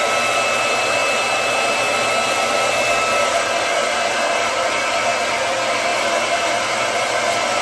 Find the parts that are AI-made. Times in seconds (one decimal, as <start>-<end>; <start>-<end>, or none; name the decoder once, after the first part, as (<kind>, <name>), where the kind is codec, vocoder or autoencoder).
3.8-4.5 (vocoder, BigVGAN v2)